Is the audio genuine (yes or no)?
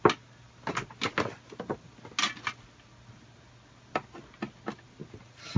yes